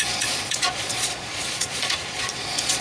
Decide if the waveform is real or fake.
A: fake